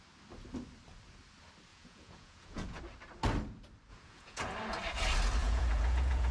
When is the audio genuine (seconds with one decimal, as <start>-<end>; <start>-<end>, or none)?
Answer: 0.0-1.7; 2.8-3.9; 4.4-5.4